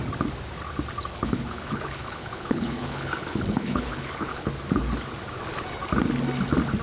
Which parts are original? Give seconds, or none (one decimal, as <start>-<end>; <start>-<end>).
0.0-1.1; 4.5-6.8